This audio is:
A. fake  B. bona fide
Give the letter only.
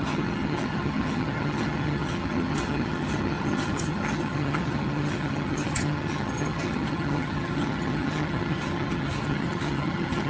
A